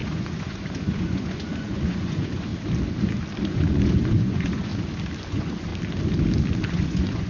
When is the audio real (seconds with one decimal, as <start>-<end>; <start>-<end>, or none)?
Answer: 2.5-3.5; 4.7-5.3; 5.7-6.7